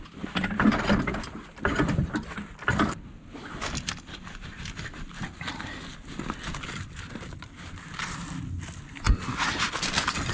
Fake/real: real